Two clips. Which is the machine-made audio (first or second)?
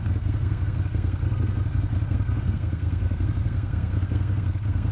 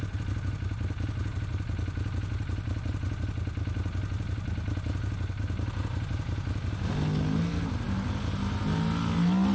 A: first